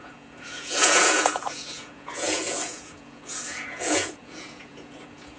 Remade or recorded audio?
remade